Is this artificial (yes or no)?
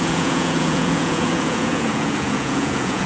yes